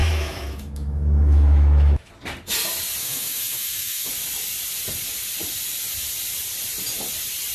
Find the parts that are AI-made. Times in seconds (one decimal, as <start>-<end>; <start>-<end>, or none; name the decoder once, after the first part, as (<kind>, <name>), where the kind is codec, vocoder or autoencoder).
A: 0.0-2.1 (autoencoder, DAC-VAE); 3.0-4.1